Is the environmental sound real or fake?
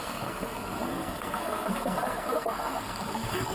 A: fake